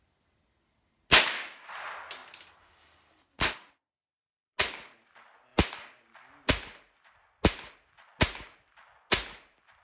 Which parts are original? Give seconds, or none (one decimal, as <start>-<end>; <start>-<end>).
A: 0.0-9.8